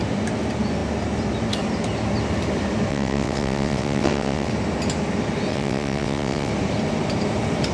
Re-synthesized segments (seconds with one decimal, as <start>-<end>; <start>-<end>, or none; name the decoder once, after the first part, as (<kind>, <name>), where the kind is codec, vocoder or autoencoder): 2.9-4.5 (vocoder, WaveNeXt); 5.5-6.5